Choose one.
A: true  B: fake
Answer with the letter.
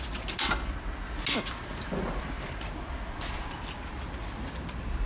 A